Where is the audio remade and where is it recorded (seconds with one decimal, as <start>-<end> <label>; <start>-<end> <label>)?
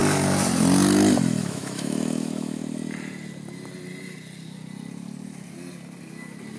0.0-1.4 recorded; 1.4-2.6 remade; 2.6-6.6 recorded